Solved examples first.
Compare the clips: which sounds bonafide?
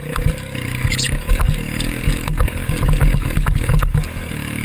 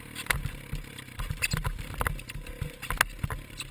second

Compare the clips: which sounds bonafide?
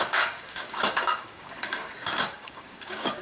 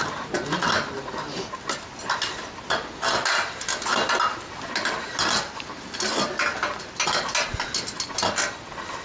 second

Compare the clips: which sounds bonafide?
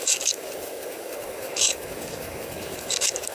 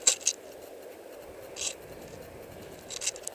second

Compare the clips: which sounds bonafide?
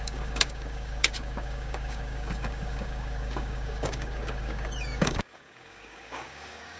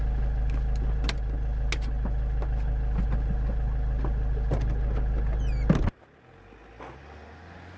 second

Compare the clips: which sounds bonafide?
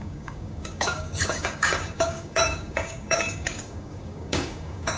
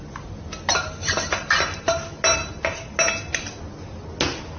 second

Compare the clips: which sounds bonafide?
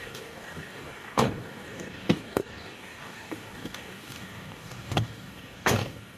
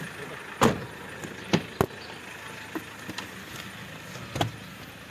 second